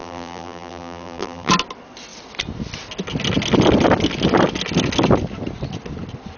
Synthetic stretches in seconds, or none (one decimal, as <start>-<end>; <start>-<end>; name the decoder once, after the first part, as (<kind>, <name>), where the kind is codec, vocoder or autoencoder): 0.0-1.5 (vocoder, BigVGAN v2)